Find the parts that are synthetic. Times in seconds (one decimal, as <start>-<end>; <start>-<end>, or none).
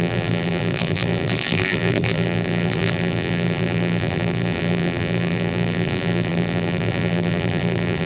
0.0-8.1